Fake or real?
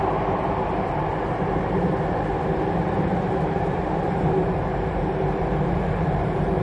fake